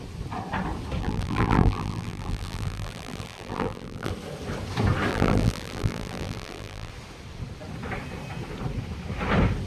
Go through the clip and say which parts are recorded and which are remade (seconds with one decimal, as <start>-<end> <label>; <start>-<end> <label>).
0.0-1.0 recorded; 1.0-4.1 remade; 4.1-5.1 recorded; 5.1-6.9 remade; 6.9-9.7 recorded